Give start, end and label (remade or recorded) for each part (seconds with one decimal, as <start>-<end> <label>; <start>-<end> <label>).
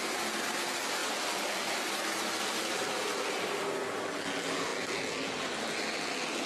0.0-1.0 recorded; 1.0-3.6 remade; 3.6-6.5 recorded